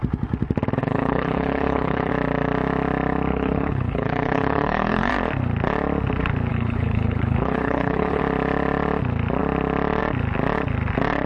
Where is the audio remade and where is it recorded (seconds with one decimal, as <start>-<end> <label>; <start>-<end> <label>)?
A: 0.0-0.8 recorded; 0.8-2.1 remade; 2.1-3.3 recorded; 3.3-5.1 remade; 5.1-6.5 recorded; 6.5-8.2 remade; 8.2-11.3 recorded